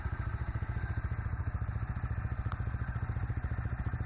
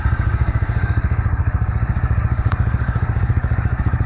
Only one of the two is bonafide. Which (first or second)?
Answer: first